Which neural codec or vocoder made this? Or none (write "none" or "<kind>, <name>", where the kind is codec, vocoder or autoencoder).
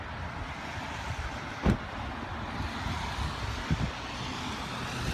none